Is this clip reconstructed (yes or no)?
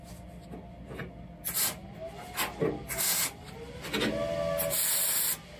no